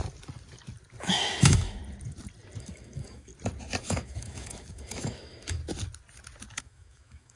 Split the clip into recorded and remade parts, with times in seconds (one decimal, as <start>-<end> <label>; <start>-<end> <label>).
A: 0.0-1.0 recorded; 1.0-1.8 remade; 1.8-2.6 recorded; 2.6-3.3 remade; 3.3-3.8 recorded; 3.8-5.6 remade; 5.6-6.6 recorded; 6.6-7.4 remade